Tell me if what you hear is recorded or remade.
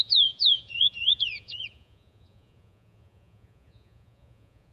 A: remade